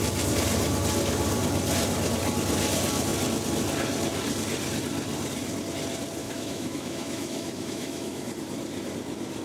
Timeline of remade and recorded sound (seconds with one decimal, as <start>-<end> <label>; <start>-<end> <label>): 0.0-6.2 recorded; 6.2-8.3 remade; 8.3-9.4 recorded